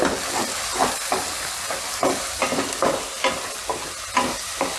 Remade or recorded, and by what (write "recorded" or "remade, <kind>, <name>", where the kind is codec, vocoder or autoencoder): recorded